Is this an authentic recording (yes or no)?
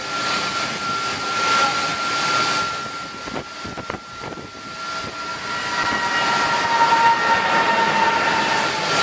yes